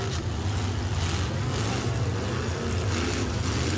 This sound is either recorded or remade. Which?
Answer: recorded